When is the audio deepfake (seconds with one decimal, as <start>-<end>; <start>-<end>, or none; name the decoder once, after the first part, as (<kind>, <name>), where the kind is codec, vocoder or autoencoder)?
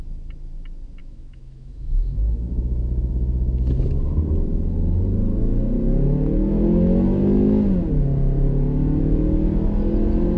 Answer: 1.0-3.1 (autoencoder, DAC-VAE)